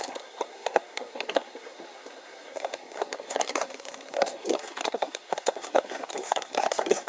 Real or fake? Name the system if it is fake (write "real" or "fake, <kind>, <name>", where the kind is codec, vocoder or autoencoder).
fake, codec, SNAC